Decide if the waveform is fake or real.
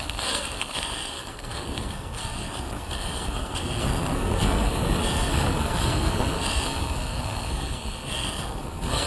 fake